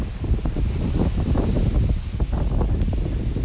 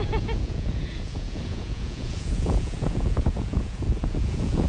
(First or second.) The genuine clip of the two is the first